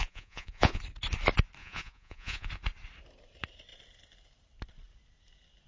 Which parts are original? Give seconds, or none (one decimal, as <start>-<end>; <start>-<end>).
0.8-1.6; 2.5-5.7